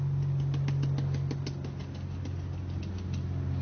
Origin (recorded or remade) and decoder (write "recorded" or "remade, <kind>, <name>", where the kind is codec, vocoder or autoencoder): recorded